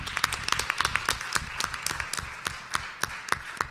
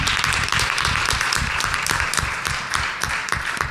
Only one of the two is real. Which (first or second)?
first